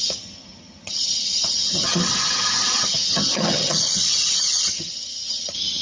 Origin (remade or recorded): remade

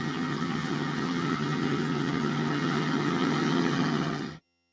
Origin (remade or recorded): remade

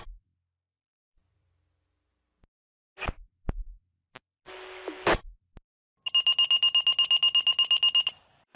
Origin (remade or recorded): recorded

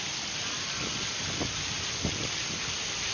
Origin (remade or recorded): recorded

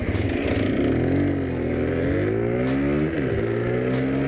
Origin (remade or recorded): recorded